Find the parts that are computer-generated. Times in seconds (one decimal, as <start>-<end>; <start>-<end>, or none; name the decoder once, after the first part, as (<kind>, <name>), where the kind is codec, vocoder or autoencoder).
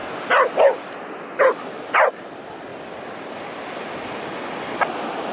2.7-5.3 (vocoder, BigVGAN v2)